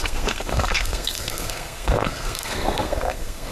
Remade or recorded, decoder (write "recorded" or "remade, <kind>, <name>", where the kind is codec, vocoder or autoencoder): remade, codec, SNAC